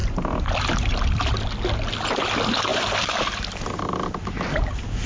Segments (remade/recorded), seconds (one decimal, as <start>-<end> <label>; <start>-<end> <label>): 0.0-2.7 recorded; 2.7-3.8 remade; 3.8-5.1 recorded